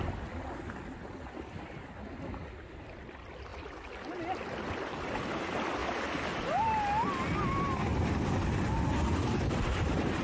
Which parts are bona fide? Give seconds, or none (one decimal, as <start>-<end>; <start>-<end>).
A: 0.0-10.2